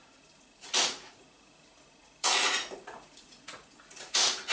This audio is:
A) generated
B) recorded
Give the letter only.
A